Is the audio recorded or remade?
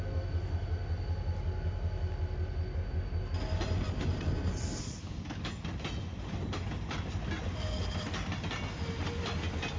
recorded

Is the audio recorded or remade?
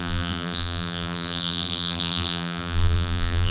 remade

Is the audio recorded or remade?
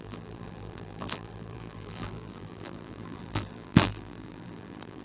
remade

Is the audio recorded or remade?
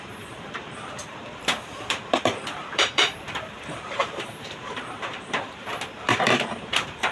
remade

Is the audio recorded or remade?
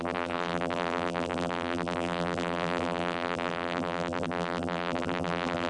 remade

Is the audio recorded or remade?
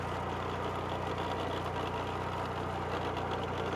recorded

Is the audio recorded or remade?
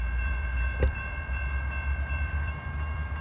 remade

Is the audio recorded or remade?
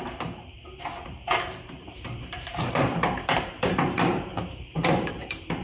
remade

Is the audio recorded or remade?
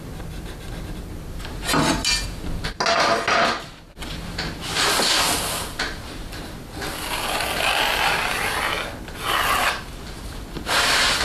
recorded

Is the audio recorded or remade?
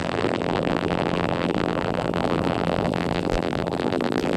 remade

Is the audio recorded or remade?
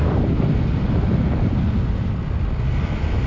recorded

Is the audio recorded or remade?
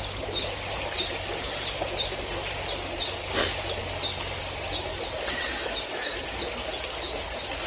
recorded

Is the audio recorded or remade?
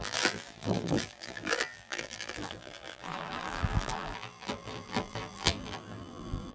remade